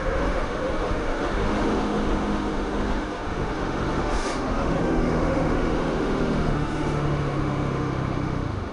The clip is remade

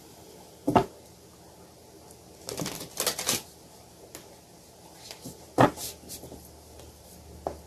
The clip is recorded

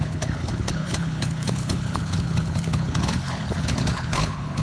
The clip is remade